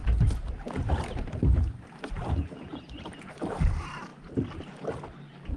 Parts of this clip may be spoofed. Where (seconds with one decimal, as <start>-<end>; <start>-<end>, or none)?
0.0-1.3; 2.7-3.5